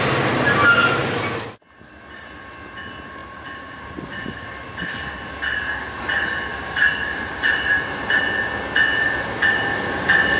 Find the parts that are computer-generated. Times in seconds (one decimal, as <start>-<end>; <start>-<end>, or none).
3.2-5.1; 6.5-8.2